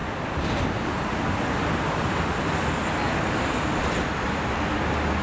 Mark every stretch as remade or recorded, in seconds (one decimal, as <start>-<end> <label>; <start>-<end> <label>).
0.0-5.2 recorded